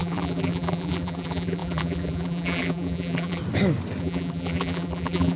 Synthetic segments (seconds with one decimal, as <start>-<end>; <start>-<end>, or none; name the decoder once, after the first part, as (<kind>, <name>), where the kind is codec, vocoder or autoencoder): 0.0-3.4 (vocoder, BigVGAN v2); 4.0-5.4